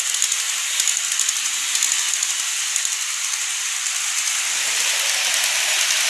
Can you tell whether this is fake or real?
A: real